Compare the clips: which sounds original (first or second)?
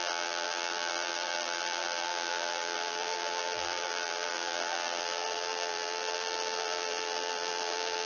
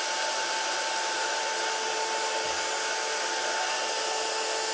second